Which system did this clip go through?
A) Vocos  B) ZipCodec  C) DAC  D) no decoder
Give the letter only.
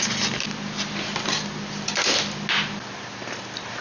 D